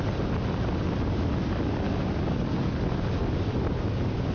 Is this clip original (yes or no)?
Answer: yes